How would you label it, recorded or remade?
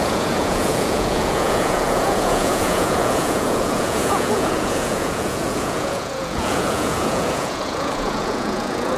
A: remade